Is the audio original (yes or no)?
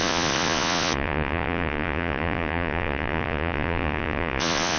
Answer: no